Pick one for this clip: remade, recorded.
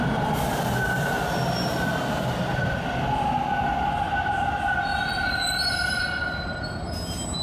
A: recorded